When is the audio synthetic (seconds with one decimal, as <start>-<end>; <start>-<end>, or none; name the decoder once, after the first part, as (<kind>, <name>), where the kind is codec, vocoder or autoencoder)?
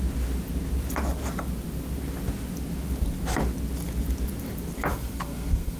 4.9-5.8 (codec, SNAC)